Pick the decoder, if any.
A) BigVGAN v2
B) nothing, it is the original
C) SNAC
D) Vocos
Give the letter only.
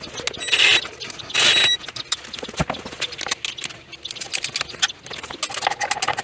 B